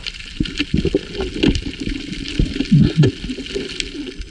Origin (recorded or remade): recorded